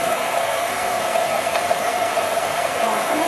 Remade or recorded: remade